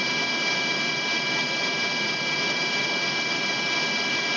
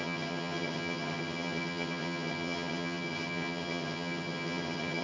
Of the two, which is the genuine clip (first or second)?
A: first